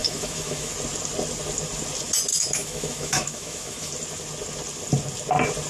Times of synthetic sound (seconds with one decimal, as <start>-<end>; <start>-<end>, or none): 0.0-0.7; 2.3-3.9

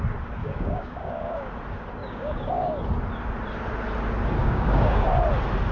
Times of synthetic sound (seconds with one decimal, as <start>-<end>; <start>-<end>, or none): 0.4-1.5; 2.0-2.8; 4.4-5.1